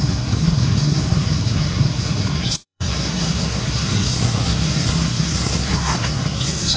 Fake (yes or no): yes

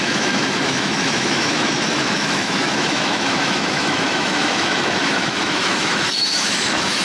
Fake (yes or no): yes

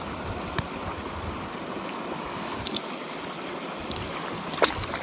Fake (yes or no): no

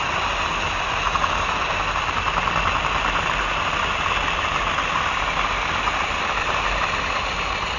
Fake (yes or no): no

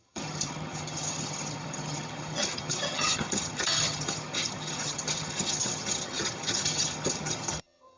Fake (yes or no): yes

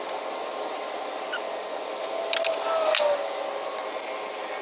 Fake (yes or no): no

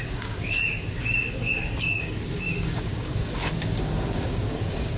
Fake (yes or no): yes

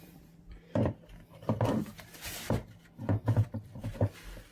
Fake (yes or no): yes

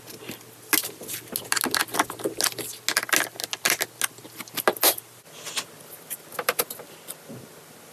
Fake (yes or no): no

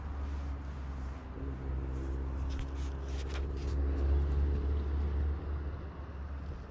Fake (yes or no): no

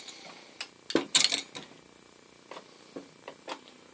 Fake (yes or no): no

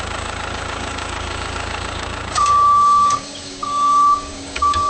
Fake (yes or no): yes